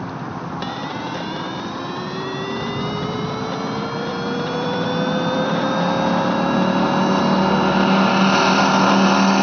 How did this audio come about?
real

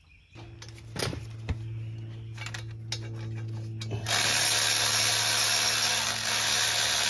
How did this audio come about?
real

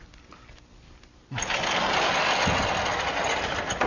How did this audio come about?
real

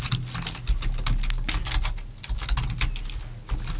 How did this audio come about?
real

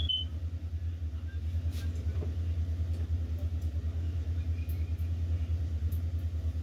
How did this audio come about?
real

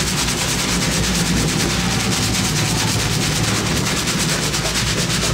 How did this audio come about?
real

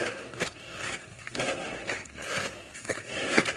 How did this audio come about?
fake